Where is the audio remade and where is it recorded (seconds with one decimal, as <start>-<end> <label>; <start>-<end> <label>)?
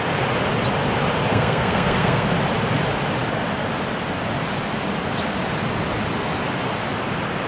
0.0-1.3 recorded; 1.3-2.3 remade; 2.3-7.5 recorded